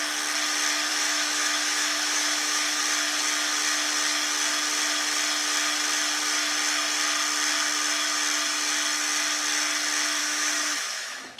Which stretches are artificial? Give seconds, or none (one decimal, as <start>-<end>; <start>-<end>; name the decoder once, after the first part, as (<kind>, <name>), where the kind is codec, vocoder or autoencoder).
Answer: 0.9-2.8 (autoencoder, DAC-VAE); 10.2-11.4